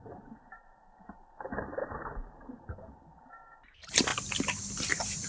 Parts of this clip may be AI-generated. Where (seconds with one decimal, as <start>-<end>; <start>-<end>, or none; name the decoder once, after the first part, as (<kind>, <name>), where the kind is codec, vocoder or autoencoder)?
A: none